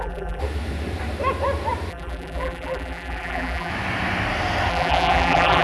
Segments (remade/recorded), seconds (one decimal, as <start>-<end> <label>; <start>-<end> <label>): 0.0-0.4 remade; 0.4-1.9 recorded; 1.9-3.7 remade; 3.7-4.7 recorded; 4.7-5.6 remade